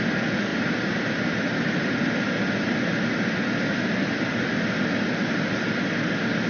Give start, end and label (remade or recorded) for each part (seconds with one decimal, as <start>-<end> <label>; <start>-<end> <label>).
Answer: 0.0-6.5 recorded